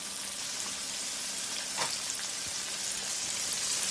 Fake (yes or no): no